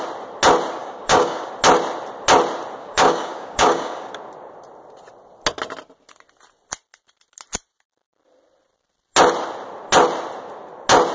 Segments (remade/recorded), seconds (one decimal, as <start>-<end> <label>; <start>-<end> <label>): 0.0-0.8 recorded; 0.8-1.5 remade; 1.5-2.8 recorded; 2.8-4.1 remade; 4.1-11.1 recorded